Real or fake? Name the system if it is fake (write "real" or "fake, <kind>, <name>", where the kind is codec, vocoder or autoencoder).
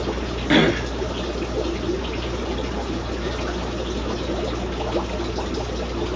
real